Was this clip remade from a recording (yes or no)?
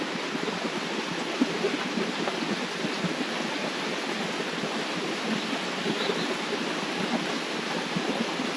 no